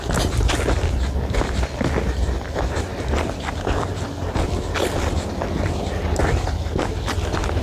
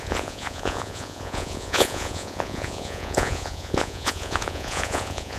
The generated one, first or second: second